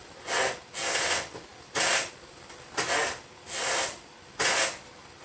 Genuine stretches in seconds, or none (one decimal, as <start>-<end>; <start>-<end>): 0.0-5.2